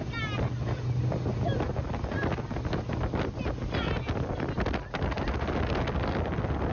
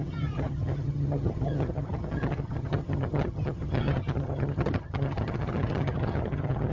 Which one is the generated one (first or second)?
second